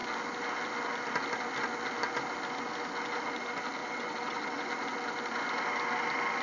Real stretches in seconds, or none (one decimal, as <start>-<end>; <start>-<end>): 0.0-3.8; 4.7-6.4